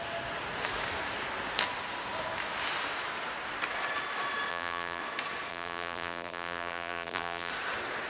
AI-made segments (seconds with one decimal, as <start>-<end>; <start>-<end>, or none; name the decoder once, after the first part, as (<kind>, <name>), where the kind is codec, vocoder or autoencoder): 4.5-5.0 (vocoder, BigVGAN v2); 5.5-7.5